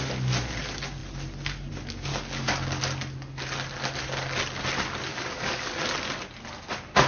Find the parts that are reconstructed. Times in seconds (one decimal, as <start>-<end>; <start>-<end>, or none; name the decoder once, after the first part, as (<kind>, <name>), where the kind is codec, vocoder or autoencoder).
2.1-2.8 (codec, DAC); 5.1-5.8